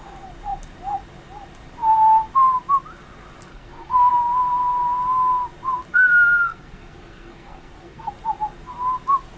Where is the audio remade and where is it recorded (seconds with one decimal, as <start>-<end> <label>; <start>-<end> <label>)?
0.0-3.5 recorded; 3.5-4.1 remade; 4.1-5.9 recorded; 5.9-8.1 remade; 8.1-9.4 recorded